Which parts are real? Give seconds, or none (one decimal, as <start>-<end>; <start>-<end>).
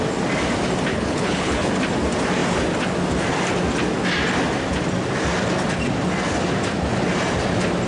0.0-0.9; 1.7-7.9